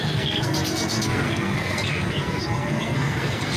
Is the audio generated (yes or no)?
yes